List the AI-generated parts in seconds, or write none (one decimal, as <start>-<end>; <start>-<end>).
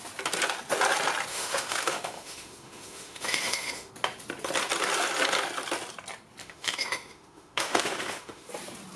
1.3-3.9; 6.4-8.5